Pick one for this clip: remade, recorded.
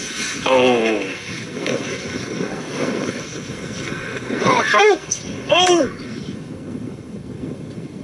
remade